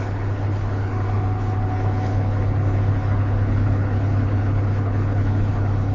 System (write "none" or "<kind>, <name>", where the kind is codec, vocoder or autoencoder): codec, HILCodec